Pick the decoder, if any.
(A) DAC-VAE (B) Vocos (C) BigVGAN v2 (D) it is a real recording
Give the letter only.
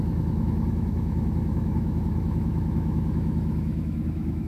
A